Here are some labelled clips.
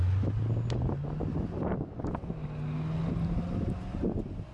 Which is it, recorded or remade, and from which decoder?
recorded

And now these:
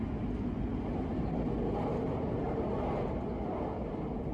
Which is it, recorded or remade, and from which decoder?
recorded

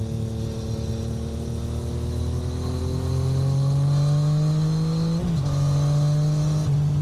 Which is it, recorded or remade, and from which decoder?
recorded